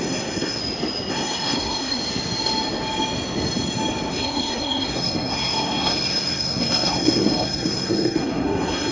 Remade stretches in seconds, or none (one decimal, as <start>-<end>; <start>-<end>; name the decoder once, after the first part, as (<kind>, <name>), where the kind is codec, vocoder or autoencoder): 0.0-0.6 (codec, SNAC); 1.1-2.0; 4.1-8.9